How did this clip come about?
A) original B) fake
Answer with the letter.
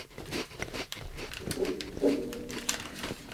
B